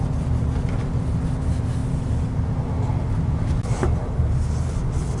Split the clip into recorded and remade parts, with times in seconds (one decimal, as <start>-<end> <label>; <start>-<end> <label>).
0.0-5.2 recorded